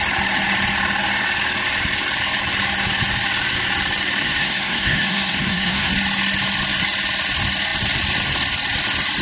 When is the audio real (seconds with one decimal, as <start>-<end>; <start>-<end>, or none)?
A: 0.0-4.2; 5.9-9.2